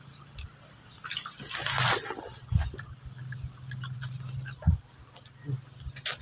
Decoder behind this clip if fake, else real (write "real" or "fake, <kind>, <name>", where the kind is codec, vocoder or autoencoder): real